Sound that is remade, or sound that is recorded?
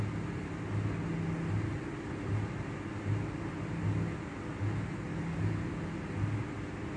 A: recorded